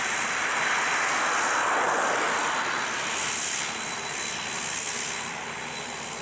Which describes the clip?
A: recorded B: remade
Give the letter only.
A